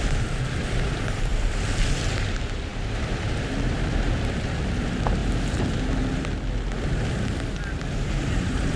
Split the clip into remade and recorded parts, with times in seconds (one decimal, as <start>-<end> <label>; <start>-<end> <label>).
0.0-1.3 remade; 1.3-1.9 recorded; 1.9-5.2 remade; 5.2-8.0 recorded; 8.0-8.8 remade